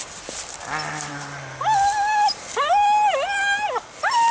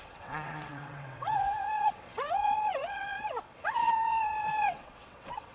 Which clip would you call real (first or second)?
first